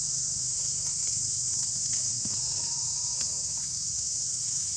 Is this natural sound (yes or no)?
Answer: no